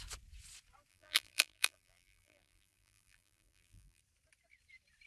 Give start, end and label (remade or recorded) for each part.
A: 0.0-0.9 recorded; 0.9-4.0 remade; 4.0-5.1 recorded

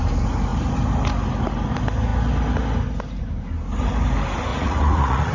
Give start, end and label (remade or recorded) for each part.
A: 0.0-4.5 recorded; 4.5-5.3 remade